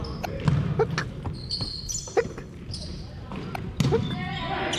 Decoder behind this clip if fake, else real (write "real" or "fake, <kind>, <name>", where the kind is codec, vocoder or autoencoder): real